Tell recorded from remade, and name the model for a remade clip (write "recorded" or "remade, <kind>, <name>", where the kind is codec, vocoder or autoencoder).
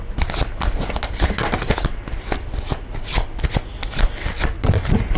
recorded